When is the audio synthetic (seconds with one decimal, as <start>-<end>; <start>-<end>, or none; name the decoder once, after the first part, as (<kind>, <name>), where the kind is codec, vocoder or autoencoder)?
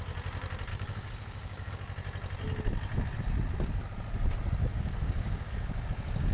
0.7-1.7 (codec, DAC); 4.6-5.5